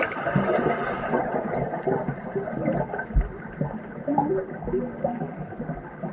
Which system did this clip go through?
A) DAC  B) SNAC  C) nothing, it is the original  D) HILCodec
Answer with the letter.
C